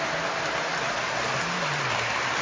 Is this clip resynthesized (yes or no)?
no